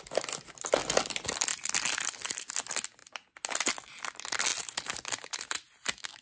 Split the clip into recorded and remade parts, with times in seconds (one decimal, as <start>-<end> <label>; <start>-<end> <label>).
0.0-6.2 recorded